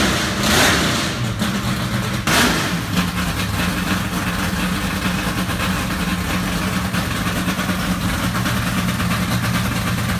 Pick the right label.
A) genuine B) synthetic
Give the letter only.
A